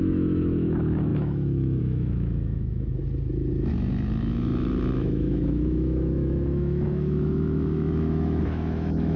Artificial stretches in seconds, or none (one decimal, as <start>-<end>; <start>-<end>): 0.0-3.0; 3.5-9.2